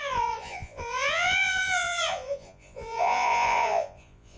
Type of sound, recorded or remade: remade